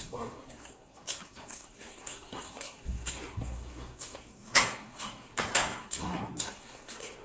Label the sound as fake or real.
fake